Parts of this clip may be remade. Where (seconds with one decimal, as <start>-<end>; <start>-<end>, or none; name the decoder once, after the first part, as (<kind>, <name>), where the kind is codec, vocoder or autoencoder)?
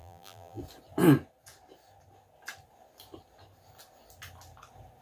0.0-0.6 (vocoder, BigVGAN v2)